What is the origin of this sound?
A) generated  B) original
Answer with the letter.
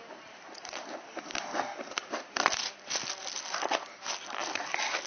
B